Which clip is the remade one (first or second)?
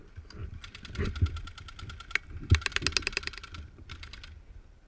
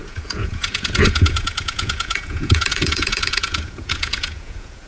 second